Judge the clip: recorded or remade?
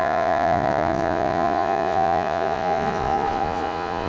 remade